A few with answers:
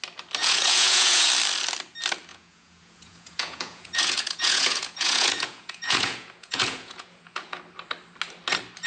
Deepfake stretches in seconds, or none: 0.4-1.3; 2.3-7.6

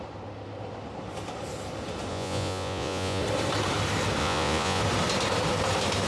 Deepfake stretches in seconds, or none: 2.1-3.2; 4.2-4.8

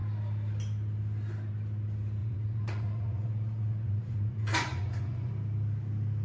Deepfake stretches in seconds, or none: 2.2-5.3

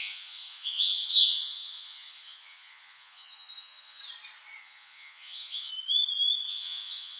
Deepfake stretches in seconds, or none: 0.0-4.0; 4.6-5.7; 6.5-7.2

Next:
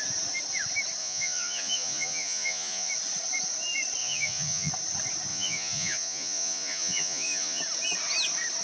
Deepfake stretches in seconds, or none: 1.0-2.9; 4.0-4.7; 5.3-7.6

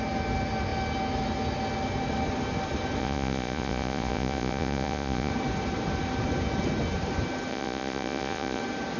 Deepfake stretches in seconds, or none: 3.0-5.3; 7.5-8.6

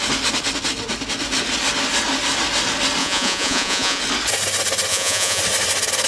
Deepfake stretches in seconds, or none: 3.0-4.0; 4.9-5.4